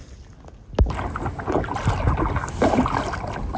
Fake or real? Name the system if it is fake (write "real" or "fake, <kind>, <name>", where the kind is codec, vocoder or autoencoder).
real